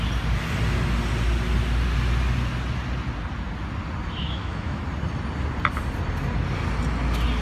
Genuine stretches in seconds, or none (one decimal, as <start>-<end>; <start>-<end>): 0.0-4.2; 4.8-7.4